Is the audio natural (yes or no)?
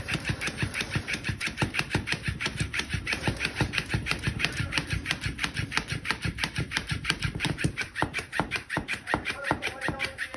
no